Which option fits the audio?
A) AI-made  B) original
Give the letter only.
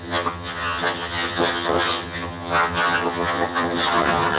A